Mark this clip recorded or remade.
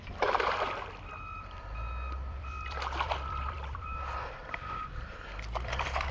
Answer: remade